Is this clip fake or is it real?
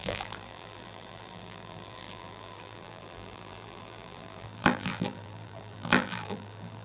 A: fake